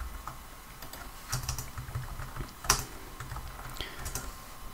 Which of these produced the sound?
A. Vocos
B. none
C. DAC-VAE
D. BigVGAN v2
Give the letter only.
B